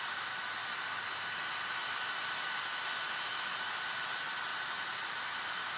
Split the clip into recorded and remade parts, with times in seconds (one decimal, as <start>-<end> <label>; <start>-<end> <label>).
0.0-0.6 remade; 0.6-4.1 recorded; 4.1-5.8 remade